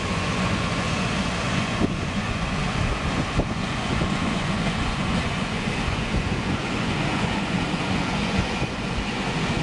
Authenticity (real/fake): fake